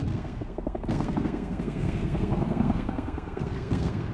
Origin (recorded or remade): remade